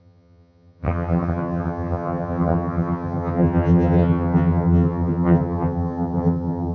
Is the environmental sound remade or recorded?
remade